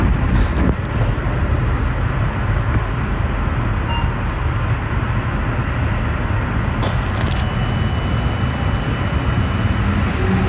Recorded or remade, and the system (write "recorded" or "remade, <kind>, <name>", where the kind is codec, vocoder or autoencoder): recorded